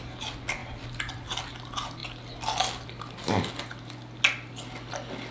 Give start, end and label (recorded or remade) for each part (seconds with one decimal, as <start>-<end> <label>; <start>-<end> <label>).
0.0-5.3 recorded